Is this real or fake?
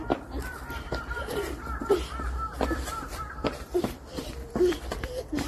fake